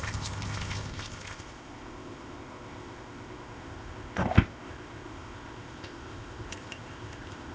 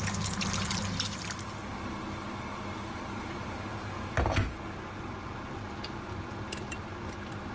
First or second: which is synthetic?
first